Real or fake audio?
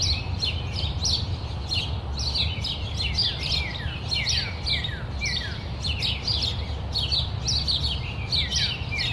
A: real